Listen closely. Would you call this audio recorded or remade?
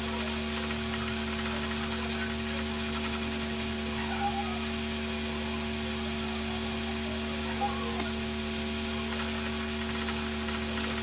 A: recorded